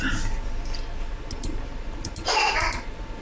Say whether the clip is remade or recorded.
recorded